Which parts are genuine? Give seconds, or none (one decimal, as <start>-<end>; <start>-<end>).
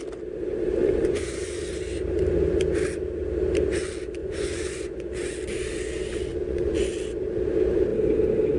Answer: 0.0-0.8; 1.7-4.2; 5.3-6.3; 6.9-8.6